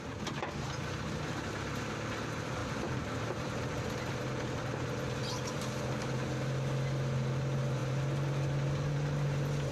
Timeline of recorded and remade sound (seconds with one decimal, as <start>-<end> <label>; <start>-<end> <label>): 0.0-2.6 recorded; 2.6-5.6 remade; 5.6-9.7 recorded